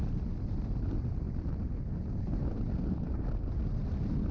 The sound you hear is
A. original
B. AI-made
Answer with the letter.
A